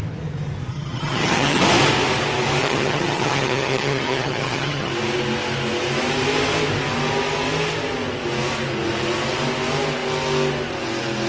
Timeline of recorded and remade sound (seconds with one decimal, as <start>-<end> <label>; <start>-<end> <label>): 0.0-0.7 recorded; 0.7-1.6 remade; 1.6-2.6 recorded; 2.6-4.9 remade; 4.9-11.3 recorded